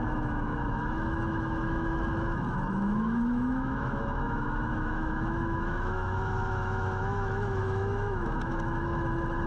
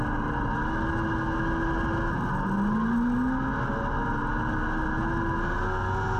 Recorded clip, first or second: second